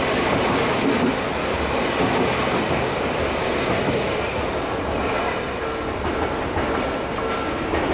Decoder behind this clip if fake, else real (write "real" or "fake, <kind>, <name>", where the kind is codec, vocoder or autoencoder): real